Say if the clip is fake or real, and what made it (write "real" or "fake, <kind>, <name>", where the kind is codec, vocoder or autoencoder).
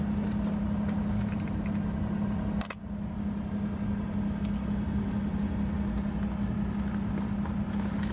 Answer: real